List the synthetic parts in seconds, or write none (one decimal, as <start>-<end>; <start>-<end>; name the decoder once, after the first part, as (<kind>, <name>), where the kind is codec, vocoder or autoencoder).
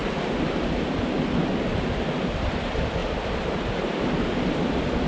1.7-2.5 (vocoder, BigVGAN v2); 3.0-4.0